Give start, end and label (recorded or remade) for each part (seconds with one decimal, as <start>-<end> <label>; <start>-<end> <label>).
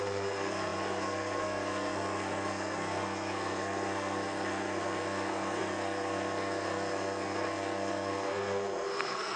0.0-9.4 remade